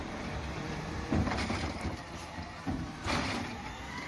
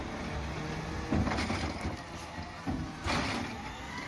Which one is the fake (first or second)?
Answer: first